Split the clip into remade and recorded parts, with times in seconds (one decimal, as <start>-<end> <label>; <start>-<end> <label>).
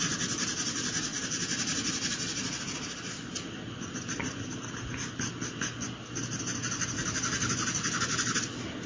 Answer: 0.0-8.9 recorded